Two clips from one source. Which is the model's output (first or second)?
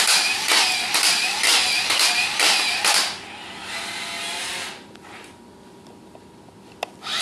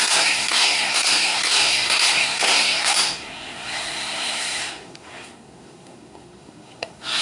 second